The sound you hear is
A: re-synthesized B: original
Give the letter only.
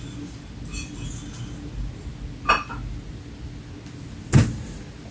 B